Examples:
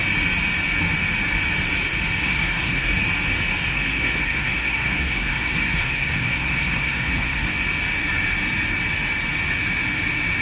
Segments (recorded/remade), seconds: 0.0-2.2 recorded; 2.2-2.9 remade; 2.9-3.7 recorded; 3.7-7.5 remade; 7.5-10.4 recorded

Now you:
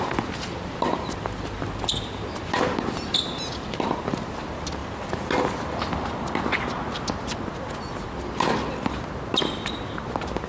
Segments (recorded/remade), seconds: 0.0-10.5 recorded

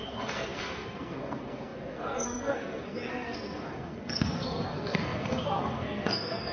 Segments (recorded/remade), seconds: 0.0-6.5 remade

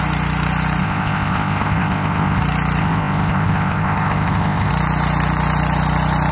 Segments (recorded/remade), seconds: 0.0-0.8 recorded; 0.8-2.4 remade; 2.4-2.8 recorded; 2.8-4.7 remade; 4.7-6.3 recorded

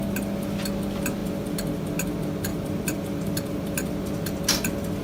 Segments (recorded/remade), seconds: 0.0-2.5 recorded; 2.5-4.4 remade; 4.4-5.0 recorded

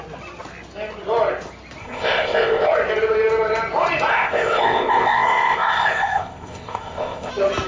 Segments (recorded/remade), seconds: 0.0-1.8 recorded; 1.8-2.7 remade; 2.7-4.1 recorded; 4.1-7.3 remade; 7.3-7.7 recorded

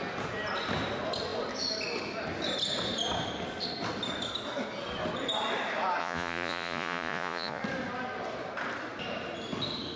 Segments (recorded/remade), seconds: 0.0-6.0 recorded; 6.0-7.6 remade; 7.6-10.0 recorded

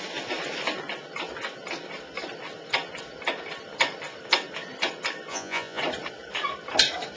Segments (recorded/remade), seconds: 0.0-5.3 recorded; 5.3-5.8 remade; 5.8-7.2 recorded